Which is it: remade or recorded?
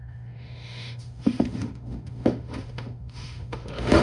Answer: remade